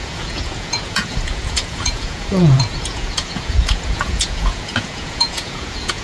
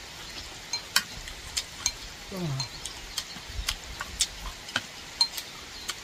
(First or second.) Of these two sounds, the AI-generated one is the first